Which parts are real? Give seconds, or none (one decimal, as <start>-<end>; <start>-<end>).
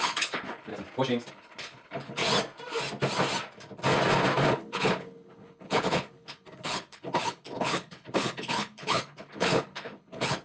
0.7-1.3; 2.2-4.5